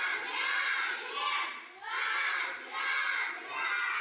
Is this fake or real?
real